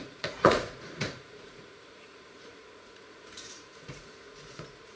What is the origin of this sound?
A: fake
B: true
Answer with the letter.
A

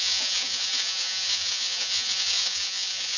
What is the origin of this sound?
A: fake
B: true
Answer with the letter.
A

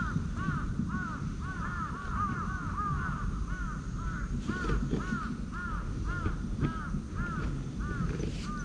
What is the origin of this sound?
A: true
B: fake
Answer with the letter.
A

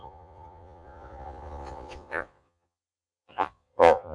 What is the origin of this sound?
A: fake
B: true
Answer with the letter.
A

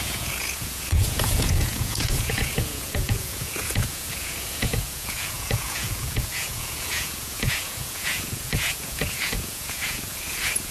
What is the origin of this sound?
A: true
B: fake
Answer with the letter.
B